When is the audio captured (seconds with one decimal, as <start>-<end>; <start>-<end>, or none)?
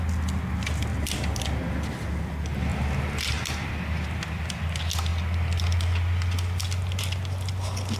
0.0-0.9; 1.4-2.7; 3.8-8.0